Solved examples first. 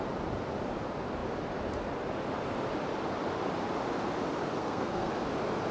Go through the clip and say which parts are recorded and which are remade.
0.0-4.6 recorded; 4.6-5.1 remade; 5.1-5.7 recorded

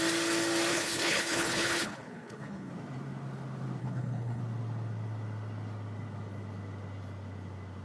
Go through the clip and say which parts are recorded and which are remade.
0.0-0.7 recorded; 0.7-2.7 remade; 2.7-3.8 recorded; 3.8-4.4 remade; 4.4-7.8 recorded

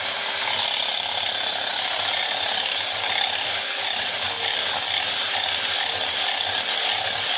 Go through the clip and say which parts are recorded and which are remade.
0.0-7.4 recorded

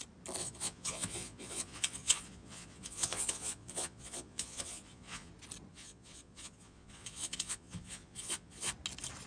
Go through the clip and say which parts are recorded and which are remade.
0.0-0.4 recorded; 0.4-5.3 remade; 5.3-5.7 recorded; 5.7-8.7 remade; 8.7-9.3 recorded

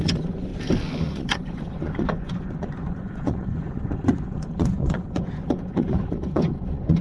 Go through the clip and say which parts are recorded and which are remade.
0.0-0.5 remade; 0.5-1.0 recorded; 1.0-7.0 remade

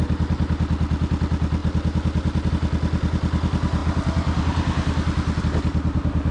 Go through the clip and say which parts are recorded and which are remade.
0.0-6.3 recorded

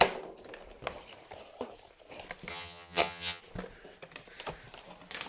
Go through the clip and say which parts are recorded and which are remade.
0.0-2.5 recorded; 2.5-3.4 remade; 3.4-5.3 recorded